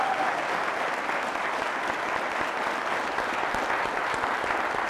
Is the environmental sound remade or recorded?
recorded